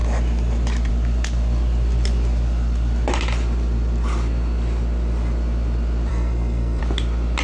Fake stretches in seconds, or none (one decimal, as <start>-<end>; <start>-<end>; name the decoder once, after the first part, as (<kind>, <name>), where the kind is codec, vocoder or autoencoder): 6.1-6.8 (codec, SNAC)